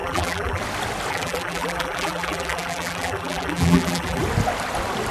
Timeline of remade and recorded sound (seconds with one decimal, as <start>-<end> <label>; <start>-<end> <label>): 0.0-0.6 remade; 0.6-1.1 recorded; 1.1-4.2 remade; 4.2-5.1 recorded